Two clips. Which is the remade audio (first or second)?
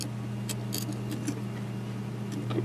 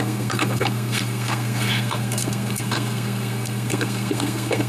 second